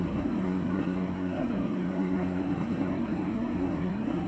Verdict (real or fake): fake